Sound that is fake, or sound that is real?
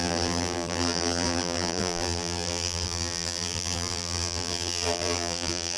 fake